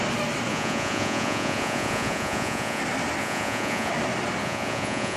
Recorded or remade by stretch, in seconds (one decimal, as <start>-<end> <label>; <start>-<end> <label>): 0.0-0.5 recorded; 0.5-2.8 remade; 2.8-3.2 recorded; 3.2-3.9 remade; 3.9-4.4 recorded; 4.4-5.2 remade